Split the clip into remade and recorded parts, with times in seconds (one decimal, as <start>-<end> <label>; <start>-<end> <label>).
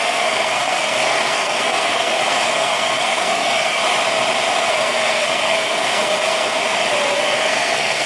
0.0-3.8 remade; 3.8-4.7 recorded; 4.7-6.6 remade; 6.6-7.1 recorded; 7.1-8.1 remade